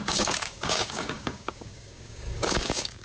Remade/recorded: remade